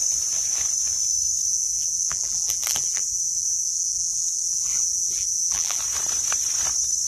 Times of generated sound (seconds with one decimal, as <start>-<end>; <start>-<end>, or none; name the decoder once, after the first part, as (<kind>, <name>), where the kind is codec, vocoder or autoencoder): 1.5-5.8 (vocoder, BigVGAN v2)